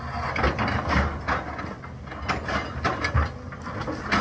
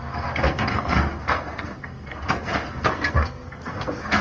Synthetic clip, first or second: second